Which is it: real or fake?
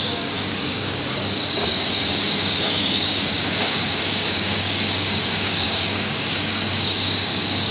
fake